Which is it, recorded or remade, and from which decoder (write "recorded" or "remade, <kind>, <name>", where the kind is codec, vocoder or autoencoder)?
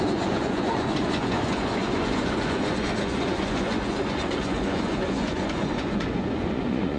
remade, vocoder, Vocos